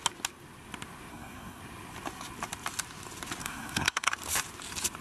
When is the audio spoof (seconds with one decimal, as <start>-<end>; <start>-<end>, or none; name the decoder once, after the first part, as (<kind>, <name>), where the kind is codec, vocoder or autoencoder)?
1.1-1.6 (codec, SNAC); 3.4-4.1